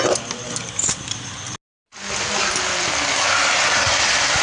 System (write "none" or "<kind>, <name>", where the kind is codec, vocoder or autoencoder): none